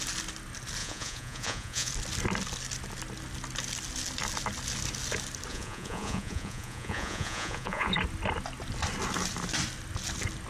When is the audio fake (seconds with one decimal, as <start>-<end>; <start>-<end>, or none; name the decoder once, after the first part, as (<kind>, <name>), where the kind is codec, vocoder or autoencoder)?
0.8-1.9 (vocoder, Vocos); 5.5-7.9